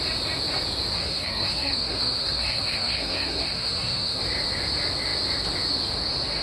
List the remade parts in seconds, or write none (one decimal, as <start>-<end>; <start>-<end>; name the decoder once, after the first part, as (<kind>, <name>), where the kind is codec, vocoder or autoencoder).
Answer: 0.9-4.2 (codec, SNAC)